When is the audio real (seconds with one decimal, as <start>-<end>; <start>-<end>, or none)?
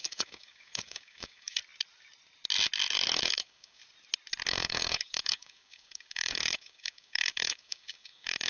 1.6-3.2; 3.8-4.5